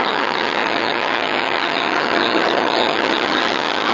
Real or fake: fake